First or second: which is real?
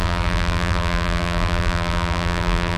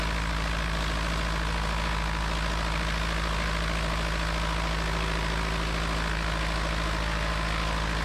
second